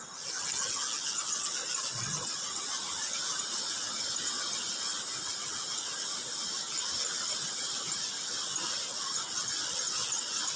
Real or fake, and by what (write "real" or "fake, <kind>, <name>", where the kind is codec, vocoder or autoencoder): real